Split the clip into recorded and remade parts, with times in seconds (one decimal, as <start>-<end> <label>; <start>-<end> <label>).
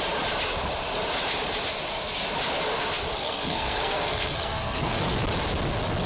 0.0-3.1 recorded; 3.1-5.0 remade; 5.0-6.1 recorded